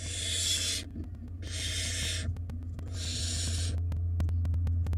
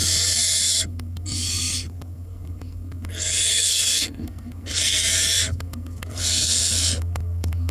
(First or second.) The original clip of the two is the first